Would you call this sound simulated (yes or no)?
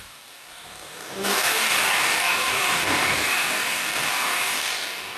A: yes